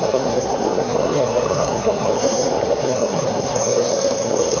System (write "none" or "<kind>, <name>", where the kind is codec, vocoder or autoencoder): codec, SNAC